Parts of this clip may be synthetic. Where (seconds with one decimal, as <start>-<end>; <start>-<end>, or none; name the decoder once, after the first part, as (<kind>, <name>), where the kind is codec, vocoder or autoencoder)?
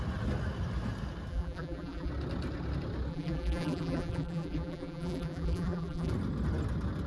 1.3-2.1 (vocoder, BigVGAN v2); 3.1-6.1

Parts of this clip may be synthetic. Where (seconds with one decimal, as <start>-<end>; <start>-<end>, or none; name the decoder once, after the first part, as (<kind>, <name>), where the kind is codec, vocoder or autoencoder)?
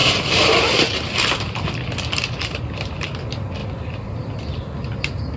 0.0-3.2 (vocoder, BigVGAN v2); 3.6-4.4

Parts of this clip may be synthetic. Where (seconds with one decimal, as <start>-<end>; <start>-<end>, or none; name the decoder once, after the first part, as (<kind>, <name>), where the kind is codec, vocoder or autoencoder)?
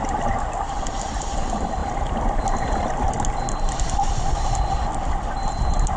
none